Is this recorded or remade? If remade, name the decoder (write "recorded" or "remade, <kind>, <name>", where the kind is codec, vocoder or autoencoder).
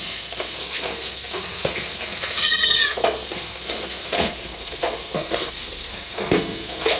remade, codec, SNAC